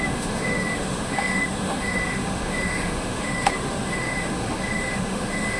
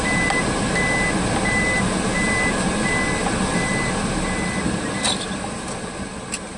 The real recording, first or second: second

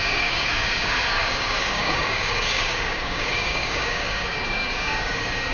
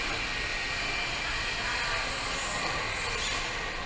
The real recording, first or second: second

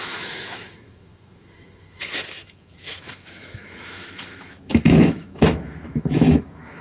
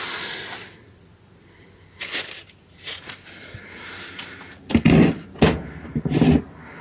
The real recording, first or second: second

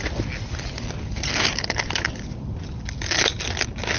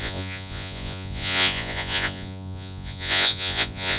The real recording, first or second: first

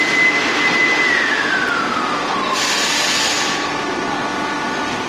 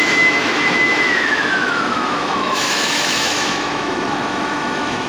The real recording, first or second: first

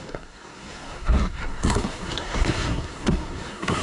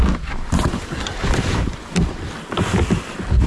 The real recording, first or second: second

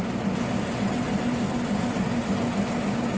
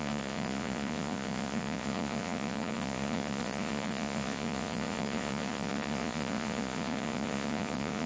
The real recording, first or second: first